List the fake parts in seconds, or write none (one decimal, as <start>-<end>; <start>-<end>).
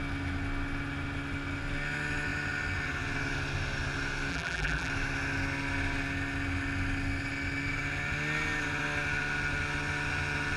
4.3-4.9